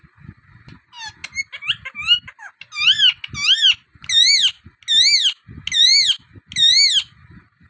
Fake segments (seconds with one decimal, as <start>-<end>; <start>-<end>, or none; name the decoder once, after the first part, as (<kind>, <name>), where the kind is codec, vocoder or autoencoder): none